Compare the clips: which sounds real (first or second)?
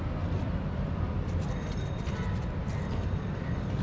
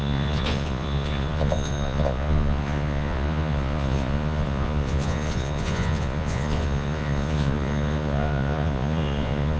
first